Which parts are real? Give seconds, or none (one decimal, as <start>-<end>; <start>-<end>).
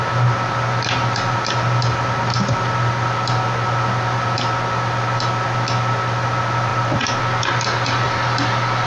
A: 0.0-8.9